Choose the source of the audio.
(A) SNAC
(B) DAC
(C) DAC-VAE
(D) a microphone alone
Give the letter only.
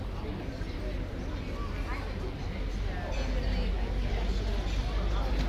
D